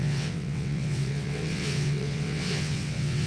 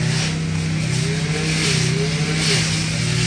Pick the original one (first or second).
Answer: second